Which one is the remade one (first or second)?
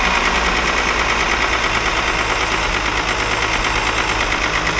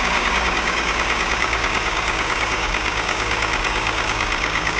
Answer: second